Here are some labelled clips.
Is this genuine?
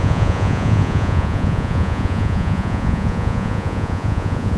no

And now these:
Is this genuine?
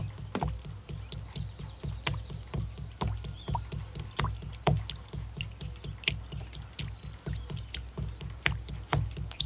yes